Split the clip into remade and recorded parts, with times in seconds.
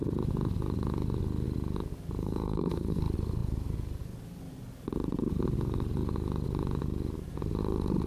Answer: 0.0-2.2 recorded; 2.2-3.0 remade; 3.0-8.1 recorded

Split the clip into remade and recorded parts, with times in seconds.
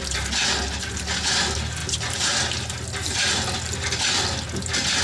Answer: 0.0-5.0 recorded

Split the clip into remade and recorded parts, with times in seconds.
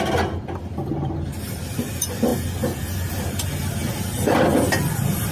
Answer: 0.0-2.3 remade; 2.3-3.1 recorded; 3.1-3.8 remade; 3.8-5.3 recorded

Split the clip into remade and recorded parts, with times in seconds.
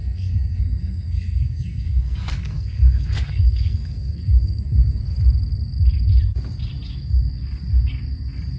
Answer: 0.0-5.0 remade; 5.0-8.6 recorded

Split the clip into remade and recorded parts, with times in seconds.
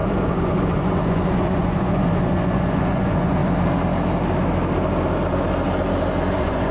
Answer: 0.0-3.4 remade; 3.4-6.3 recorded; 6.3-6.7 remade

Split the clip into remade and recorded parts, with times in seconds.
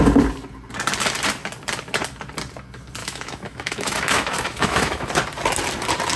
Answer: 0.0-3.0 recorded; 3.0-5.1 remade; 5.1-6.2 recorded